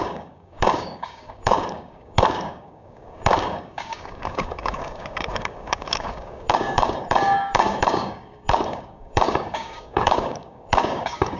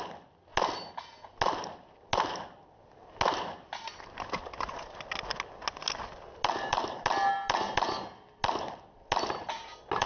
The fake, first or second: first